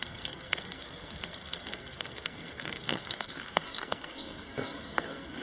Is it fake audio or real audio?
fake